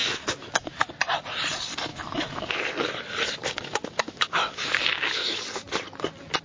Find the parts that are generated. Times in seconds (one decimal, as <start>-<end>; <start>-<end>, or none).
0.0-0.9; 1.9-2.5; 3.4-5.4